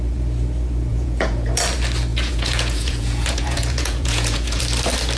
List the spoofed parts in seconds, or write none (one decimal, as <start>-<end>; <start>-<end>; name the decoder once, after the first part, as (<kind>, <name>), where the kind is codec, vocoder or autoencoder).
0.9-1.6 (vocoder, Vocos); 2.1-4.6